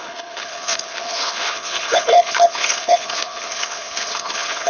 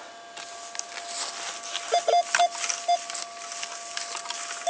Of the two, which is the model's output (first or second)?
first